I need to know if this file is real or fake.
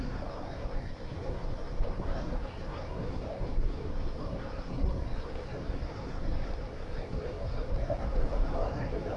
fake